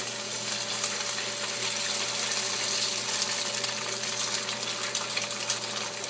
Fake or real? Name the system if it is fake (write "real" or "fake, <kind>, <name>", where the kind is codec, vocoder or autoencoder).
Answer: real